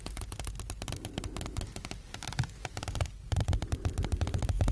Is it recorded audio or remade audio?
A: recorded